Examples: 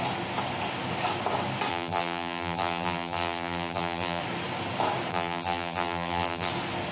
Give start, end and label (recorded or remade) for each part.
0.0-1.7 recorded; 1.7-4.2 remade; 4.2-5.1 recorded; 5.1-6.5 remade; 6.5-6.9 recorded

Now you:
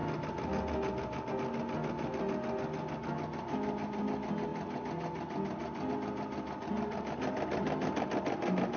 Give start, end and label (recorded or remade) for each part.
0.0-8.8 recorded

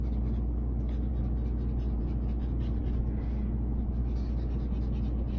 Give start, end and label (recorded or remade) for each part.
0.0-5.4 recorded

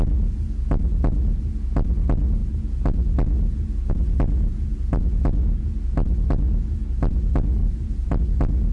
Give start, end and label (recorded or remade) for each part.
0.0-4.5 recorded; 4.5-5.0 remade; 5.0-7.6 recorded; 7.6-8.2 remade; 8.2-8.7 recorded

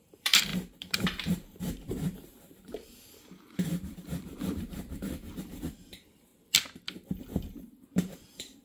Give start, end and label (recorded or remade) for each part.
0.0-6.3 remade; 6.3-7.2 recorded; 7.2-8.6 remade